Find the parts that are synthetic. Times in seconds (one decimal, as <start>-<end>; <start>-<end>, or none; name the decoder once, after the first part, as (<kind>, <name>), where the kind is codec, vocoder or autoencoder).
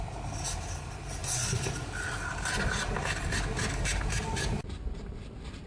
none